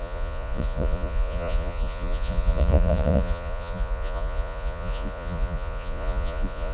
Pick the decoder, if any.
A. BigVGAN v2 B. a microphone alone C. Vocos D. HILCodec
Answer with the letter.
C